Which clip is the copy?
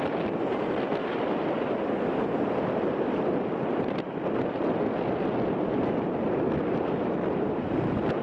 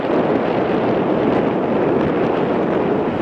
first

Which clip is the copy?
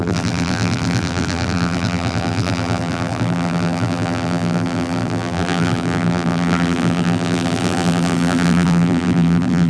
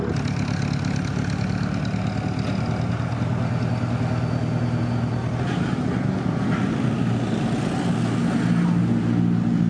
first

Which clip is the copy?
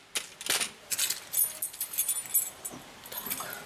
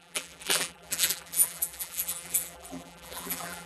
second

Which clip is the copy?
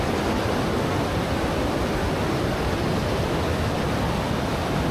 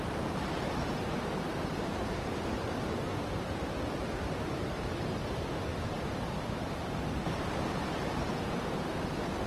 second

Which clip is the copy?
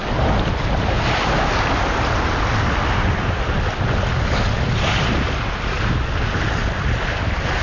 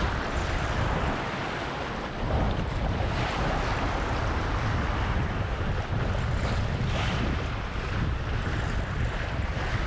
second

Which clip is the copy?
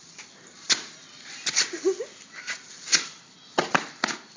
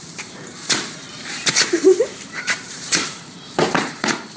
second